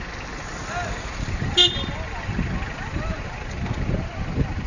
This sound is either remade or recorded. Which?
recorded